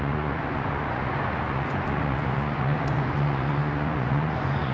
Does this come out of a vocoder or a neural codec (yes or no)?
yes